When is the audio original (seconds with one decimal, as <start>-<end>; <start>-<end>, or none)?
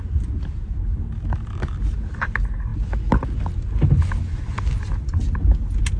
0.0-6.0